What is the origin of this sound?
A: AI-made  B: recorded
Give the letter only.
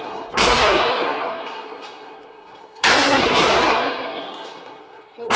A